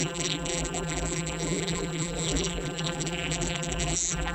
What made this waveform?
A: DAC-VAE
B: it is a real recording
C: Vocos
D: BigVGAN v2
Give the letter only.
D